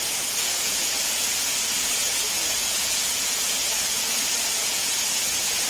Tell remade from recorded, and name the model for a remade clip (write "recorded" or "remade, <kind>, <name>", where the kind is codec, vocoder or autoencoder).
remade, vocoder, Vocos